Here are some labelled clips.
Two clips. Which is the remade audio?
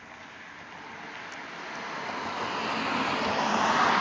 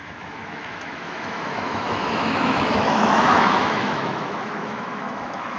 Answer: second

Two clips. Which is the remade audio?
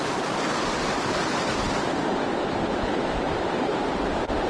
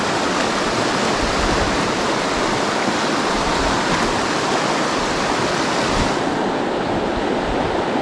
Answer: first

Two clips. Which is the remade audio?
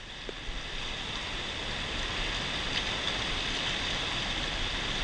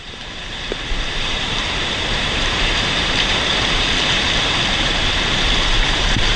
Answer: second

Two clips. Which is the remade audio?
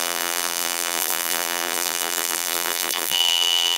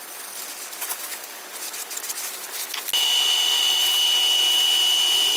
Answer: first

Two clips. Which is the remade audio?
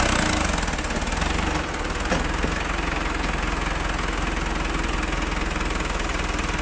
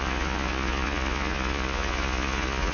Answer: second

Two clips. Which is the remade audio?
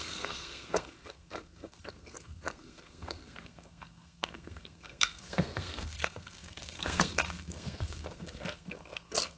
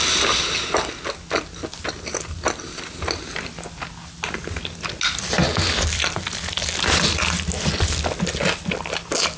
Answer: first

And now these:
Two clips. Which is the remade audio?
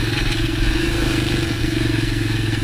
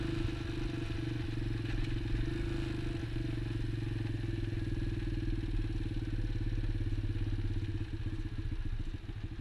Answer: first